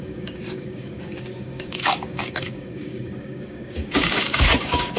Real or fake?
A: fake